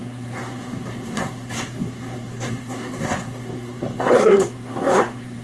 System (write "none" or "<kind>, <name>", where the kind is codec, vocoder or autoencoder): codec, SNAC